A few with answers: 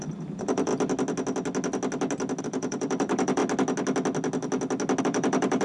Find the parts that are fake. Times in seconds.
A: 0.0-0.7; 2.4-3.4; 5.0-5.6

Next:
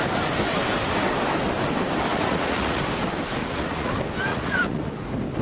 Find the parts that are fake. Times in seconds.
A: 2.1-2.8; 3.4-3.9; 4.3-4.9

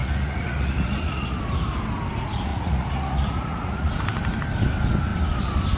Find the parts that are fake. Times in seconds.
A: 0.0-1.4; 2.5-3.9